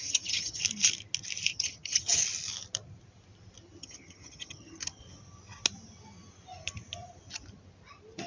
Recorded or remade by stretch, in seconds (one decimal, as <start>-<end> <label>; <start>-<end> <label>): 0.0-0.6 remade; 0.6-1.5 recorded; 1.5-2.2 remade; 2.2-3.8 recorded; 3.8-5.0 remade; 5.0-8.3 recorded